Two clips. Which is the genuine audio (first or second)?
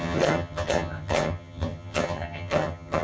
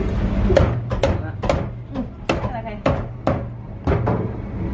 second